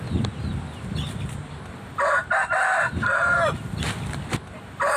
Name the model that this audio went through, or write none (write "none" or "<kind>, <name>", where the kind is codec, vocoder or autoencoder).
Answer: none